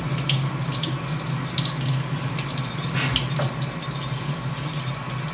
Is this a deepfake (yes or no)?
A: no